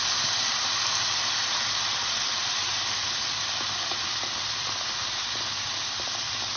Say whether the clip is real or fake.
real